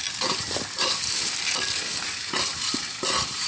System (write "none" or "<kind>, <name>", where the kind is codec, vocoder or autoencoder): none